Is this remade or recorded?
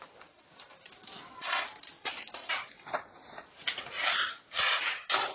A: recorded